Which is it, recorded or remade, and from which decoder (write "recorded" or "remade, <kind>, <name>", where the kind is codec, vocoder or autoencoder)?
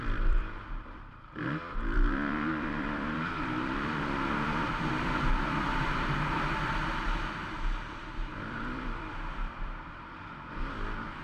remade, vocoder, BigVGAN v2